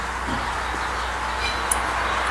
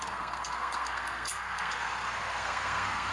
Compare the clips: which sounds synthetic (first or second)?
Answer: second